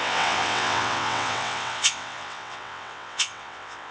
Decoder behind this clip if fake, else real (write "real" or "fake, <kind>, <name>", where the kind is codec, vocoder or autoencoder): fake, vocoder, WaveNeXt